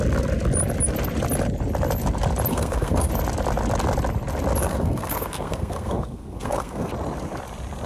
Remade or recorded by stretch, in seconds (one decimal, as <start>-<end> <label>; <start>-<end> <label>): 0.0-2.5 recorded; 2.5-3.1 remade; 3.1-4.6 recorded; 4.6-6.9 remade; 6.9-7.9 recorded